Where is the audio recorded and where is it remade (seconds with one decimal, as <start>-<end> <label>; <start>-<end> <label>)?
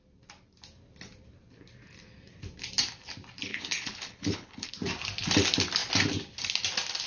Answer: 0.0-3.5 recorded; 3.5-4.7 remade; 4.7-7.1 recorded